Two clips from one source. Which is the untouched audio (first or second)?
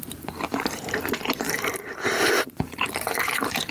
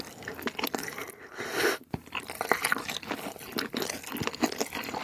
second